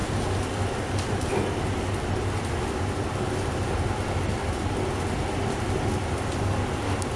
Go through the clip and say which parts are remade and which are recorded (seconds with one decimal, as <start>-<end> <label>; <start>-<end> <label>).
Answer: 0.0-7.2 recorded